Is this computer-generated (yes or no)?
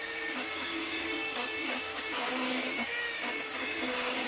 yes